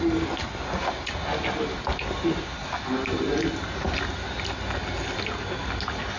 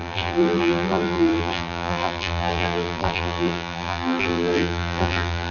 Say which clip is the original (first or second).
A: first